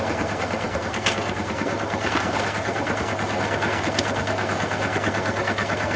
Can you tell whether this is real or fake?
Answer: fake